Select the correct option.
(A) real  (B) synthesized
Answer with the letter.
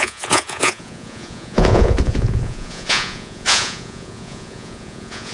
B